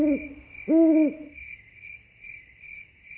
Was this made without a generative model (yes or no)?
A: yes